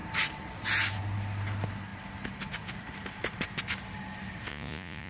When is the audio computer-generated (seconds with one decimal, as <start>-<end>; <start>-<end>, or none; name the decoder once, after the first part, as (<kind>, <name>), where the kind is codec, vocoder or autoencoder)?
4.5-5.1 (vocoder, Vocos)